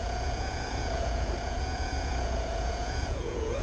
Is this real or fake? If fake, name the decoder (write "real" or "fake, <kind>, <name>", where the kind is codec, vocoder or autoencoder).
fake, vocoder, Vocos